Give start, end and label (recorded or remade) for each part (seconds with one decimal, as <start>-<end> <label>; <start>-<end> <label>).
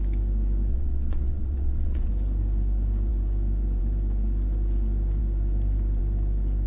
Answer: 0.0-0.7 recorded; 0.7-2.1 remade; 2.1-6.7 recorded